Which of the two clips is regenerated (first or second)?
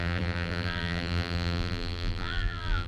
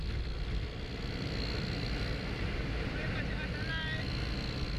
first